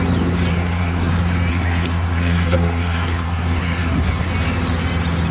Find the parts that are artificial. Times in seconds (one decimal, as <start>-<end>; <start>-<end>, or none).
0.5-1.1; 1.5-4.3